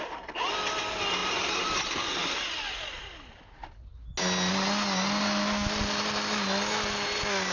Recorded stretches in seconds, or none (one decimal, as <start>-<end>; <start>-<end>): 0.0-7.5